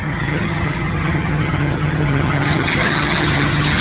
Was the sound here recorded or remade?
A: remade